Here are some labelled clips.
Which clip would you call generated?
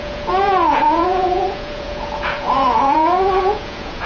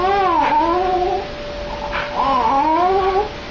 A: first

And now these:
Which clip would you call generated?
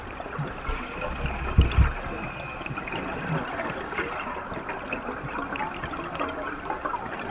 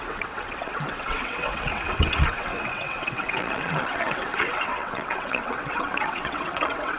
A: second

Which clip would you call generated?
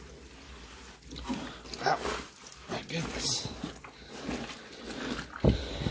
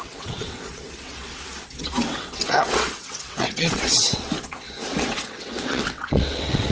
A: second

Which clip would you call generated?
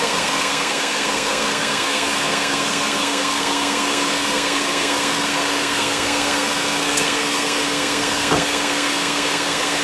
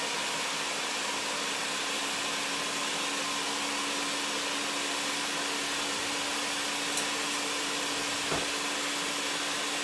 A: first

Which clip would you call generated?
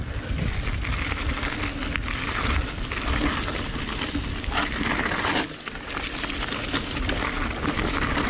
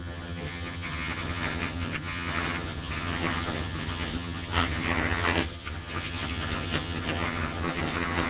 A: second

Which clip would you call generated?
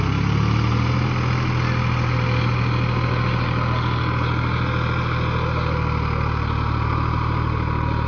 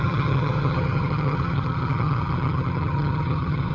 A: second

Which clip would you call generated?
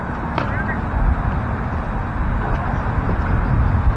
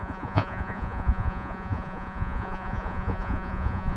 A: second